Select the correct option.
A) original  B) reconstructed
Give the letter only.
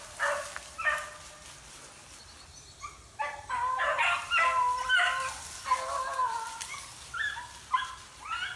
A